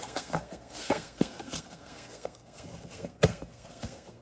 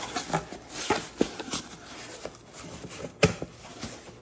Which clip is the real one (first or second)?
second